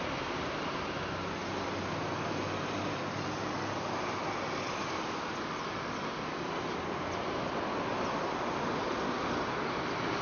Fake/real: real